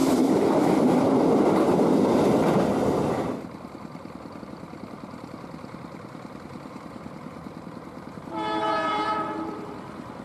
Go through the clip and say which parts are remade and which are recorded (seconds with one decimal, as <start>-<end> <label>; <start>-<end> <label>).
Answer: 0.0-10.2 remade